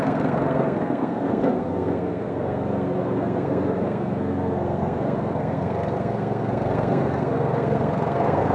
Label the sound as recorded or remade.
remade